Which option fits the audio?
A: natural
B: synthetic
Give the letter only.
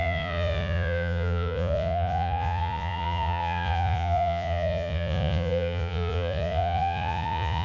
B